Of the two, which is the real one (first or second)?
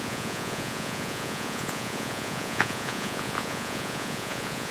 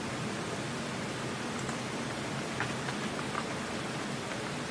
second